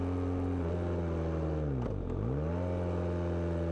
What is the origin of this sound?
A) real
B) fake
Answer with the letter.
A